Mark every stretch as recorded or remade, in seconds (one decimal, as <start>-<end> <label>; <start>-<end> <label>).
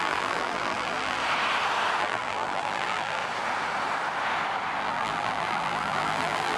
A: 0.0-1.2 remade; 1.2-2.0 recorded; 2.0-3.2 remade; 3.2-4.8 recorded; 4.8-6.6 remade